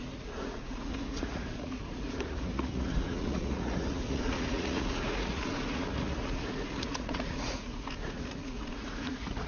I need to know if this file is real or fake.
fake